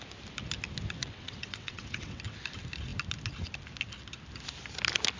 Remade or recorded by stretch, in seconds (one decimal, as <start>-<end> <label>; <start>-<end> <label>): 0.0-1.0 recorded; 1.0-2.2 remade; 2.2-5.2 recorded